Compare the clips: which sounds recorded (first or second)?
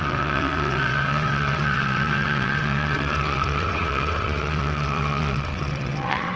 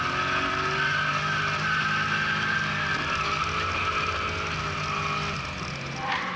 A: second